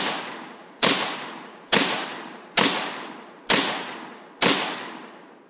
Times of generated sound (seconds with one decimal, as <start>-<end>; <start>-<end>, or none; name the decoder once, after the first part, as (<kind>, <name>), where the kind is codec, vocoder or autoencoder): 0.6-3.1 (vocoder, BigVGAN v2)